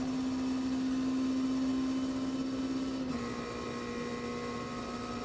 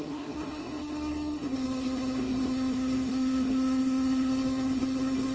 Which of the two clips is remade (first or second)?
second